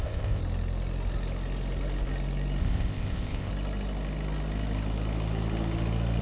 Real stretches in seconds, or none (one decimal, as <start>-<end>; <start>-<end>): 0.4-2.6; 3.5-6.2